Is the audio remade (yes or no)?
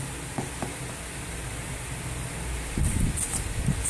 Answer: no